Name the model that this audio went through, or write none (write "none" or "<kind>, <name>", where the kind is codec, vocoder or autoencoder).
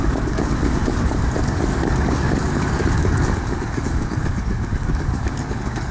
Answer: codec, DAC